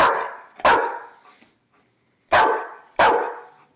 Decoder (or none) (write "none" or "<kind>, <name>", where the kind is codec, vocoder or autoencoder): none